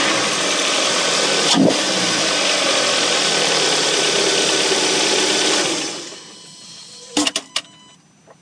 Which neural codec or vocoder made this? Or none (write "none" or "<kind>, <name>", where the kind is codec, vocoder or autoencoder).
none